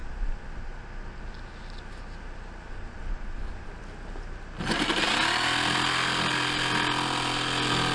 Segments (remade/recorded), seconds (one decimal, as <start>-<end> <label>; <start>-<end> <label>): 0.0-7.9 recorded